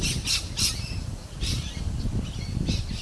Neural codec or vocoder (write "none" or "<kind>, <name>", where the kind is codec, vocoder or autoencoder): none